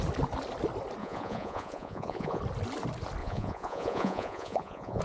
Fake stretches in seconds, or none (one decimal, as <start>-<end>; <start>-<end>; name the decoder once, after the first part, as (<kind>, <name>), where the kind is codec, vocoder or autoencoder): 1.0-2.4 (vocoder, Vocos); 3.2-5.0